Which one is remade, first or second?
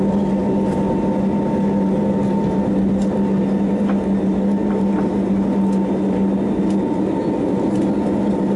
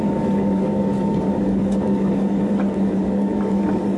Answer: second